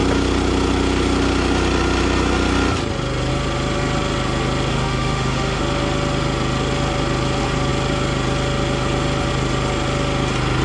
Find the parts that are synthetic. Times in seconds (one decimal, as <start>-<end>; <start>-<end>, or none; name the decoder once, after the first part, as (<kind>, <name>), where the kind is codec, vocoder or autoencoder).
4.7-5.6 (autoencoder, DAC-VAE)

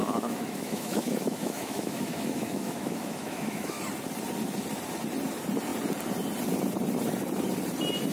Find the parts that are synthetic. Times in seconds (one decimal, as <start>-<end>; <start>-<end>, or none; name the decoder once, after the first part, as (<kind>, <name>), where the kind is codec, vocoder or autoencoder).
0.0-3.8 (autoencoder, DAC-VAE)

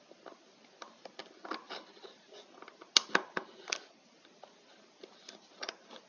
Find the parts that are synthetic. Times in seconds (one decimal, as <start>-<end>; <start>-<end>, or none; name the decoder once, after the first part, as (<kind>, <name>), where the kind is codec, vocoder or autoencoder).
none

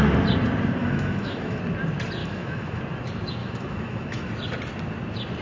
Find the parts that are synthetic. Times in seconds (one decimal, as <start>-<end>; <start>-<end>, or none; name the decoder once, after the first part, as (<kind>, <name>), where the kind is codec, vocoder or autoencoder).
0.8-1.6 (autoencoder, DAC-VAE); 2.2-2.8; 3.4-4.3

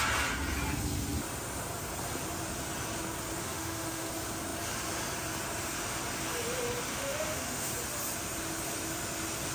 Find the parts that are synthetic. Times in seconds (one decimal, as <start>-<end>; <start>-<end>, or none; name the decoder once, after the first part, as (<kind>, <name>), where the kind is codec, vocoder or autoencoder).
3.4-4.1 (autoencoder, DAC-VAE); 6.9-7.7

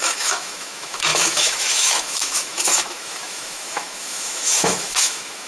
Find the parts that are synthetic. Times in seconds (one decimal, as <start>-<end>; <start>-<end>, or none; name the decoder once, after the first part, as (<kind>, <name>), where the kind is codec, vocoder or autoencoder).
0.0-5.5 (autoencoder, DAC-VAE)

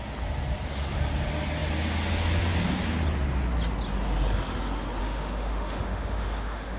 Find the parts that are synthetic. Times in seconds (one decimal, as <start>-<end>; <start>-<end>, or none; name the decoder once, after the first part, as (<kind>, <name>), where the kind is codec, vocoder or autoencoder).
5.0-6.8 (autoencoder, DAC-VAE)